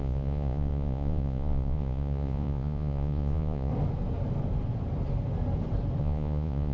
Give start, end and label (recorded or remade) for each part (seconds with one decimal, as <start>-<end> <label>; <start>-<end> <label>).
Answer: 0.0-3.7 remade; 3.7-6.0 recorded; 6.0-6.7 remade